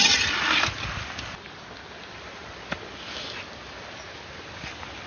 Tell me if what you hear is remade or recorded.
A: recorded